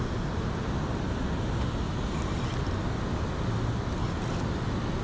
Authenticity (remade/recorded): recorded